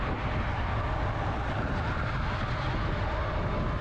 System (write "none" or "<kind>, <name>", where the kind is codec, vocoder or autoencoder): none